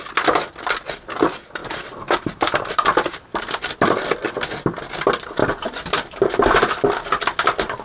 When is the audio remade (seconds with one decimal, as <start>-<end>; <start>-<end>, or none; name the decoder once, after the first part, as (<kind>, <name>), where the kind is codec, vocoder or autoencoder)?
1.6-3.6 (vocoder, BigVGAN v2); 5.4-6.7